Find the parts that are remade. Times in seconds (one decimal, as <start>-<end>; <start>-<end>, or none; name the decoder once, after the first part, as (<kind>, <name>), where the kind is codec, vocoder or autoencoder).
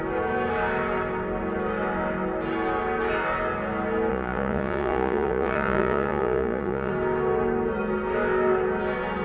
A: 4.1-6.9 (vocoder, Vocos)